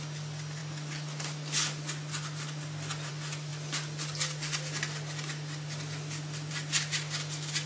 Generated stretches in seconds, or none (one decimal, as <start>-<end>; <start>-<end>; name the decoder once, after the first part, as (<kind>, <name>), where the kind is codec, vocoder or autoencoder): none